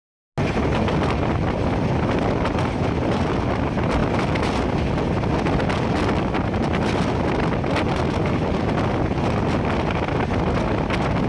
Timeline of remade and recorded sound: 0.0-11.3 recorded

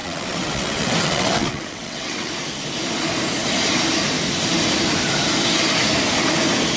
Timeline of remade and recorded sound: 0.0-2.3 remade; 2.3-6.8 recorded

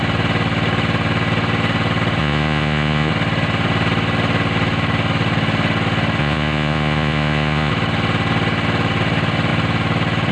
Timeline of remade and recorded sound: 0.0-2.2 recorded; 2.2-3.1 remade; 3.1-6.2 recorded; 6.2-7.7 remade; 7.7-10.3 recorded

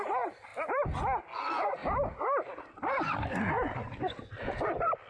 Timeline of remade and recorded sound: 0.0-0.5 recorded; 0.5-1.0 remade; 1.0-1.8 recorded; 1.8-4.2 remade; 4.2-5.1 recorded

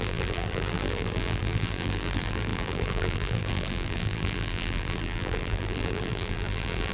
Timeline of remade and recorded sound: 0.0-6.9 remade